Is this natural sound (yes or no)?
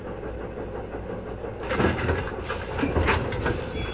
yes